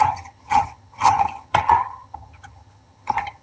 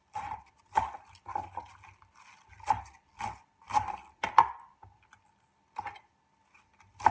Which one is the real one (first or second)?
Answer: second